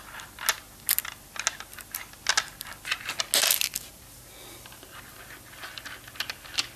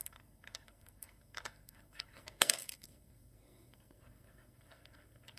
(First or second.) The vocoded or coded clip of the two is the second